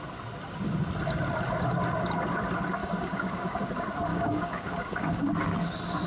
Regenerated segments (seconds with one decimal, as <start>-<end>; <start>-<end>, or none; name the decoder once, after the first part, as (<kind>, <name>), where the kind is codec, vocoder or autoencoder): 2.8-3.6 (codec, DAC); 4.1-5.3